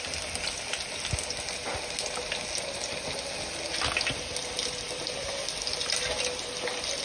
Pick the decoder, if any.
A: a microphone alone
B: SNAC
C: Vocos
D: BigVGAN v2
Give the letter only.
A